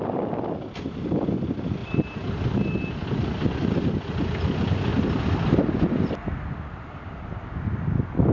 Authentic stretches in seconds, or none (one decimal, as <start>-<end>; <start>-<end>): 0.0-8.3